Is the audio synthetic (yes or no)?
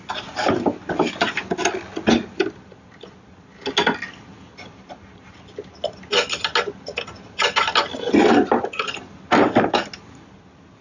no